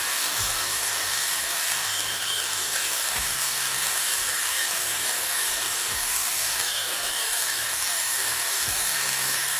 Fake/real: fake